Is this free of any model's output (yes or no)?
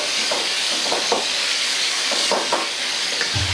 no